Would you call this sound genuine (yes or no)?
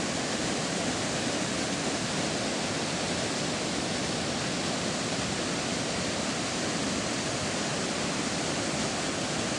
yes